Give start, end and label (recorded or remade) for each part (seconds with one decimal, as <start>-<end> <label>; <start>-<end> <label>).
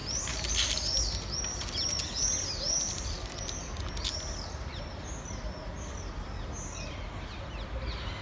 0.0-8.2 recorded